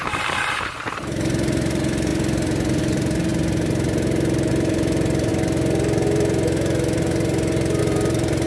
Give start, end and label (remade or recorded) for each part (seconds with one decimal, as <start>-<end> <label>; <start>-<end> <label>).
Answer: 0.0-2.1 remade; 2.1-2.8 recorded; 2.8-3.3 remade; 3.3-4.5 recorded; 4.5-5.3 remade; 5.3-7.8 recorded; 7.8-8.5 remade